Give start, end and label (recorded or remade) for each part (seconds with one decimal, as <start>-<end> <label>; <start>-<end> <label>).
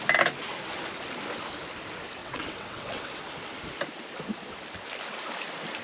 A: 0.0-2.2 recorded; 2.2-3.2 remade; 3.2-5.8 recorded